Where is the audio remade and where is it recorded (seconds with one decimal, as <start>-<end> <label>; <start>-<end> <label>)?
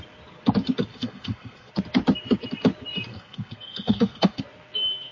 0.0-0.9 recorded; 0.9-1.7 remade; 1.7-3.1 recorded; 3.1-4.4 remade; 4.4-5.1 recorded